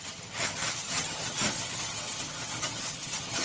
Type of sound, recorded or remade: remade